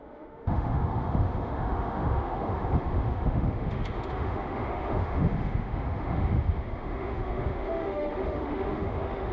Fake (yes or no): yes